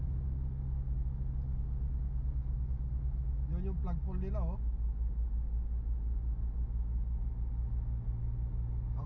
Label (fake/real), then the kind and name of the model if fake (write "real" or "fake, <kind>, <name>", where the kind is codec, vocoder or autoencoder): real